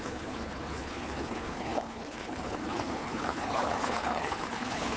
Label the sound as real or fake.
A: fake